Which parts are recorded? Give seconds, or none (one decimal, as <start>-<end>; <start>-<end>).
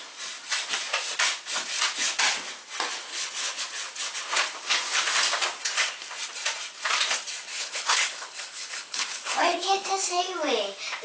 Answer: 0.0-3.1; 3.6-7.5; 10.2-11.0